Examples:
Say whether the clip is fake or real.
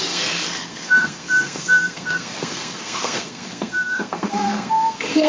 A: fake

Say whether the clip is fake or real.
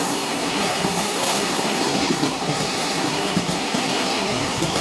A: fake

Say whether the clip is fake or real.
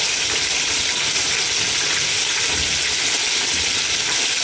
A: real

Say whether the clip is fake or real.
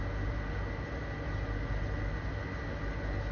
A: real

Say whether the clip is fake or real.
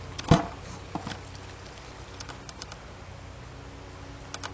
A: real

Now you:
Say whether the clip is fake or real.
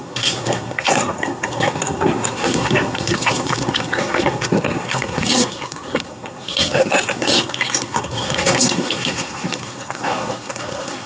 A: fake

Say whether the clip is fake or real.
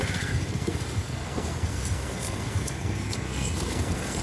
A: fake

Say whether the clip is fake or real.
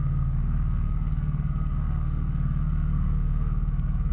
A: fake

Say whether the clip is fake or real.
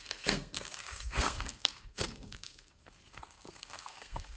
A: fake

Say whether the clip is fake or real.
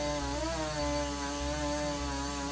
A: real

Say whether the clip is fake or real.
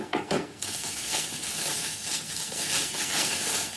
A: fake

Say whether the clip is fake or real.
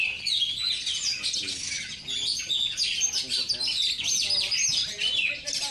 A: real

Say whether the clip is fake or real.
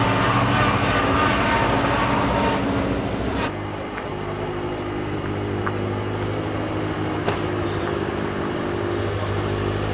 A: real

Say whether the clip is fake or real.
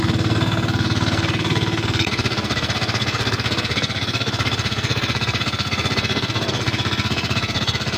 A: fake